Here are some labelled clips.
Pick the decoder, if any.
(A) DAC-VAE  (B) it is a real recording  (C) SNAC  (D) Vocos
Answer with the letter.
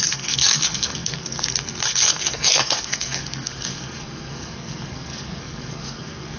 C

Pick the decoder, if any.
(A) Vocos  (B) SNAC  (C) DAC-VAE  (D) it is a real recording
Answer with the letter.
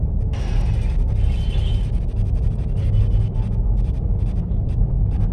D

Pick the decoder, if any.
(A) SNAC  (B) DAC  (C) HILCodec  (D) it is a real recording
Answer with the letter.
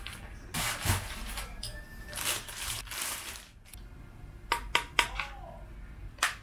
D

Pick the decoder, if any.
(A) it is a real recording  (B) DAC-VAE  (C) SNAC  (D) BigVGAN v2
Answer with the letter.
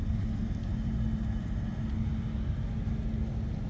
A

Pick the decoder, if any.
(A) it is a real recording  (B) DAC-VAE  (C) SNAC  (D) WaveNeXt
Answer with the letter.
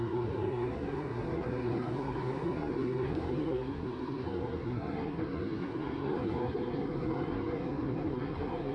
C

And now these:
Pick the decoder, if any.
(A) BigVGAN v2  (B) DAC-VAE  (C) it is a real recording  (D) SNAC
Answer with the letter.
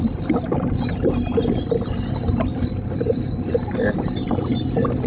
C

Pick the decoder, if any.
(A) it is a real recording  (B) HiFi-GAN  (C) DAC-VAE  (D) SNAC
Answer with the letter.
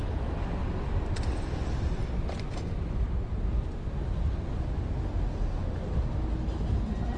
A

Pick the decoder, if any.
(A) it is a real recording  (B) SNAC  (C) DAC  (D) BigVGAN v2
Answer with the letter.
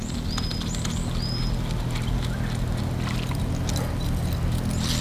A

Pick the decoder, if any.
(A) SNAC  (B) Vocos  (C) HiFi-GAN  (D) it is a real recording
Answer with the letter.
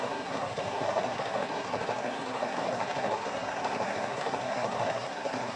A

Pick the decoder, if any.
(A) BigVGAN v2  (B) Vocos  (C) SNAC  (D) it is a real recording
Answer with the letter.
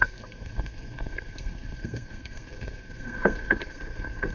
C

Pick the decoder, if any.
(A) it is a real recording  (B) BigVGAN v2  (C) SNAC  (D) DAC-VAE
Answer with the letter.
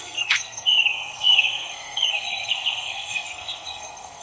C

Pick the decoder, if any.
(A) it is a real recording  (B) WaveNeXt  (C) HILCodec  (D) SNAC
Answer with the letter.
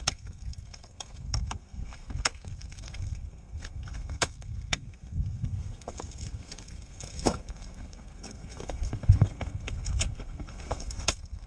D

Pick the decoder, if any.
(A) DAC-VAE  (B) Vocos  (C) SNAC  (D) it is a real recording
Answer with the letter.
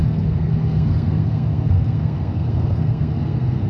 C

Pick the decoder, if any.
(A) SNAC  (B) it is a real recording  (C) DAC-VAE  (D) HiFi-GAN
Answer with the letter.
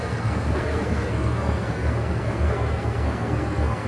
A